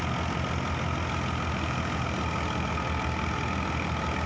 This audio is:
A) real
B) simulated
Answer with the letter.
A